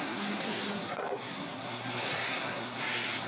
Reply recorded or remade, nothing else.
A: remade